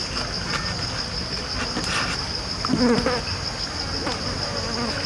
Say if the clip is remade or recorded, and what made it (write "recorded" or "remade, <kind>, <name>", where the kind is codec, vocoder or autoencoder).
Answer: recorded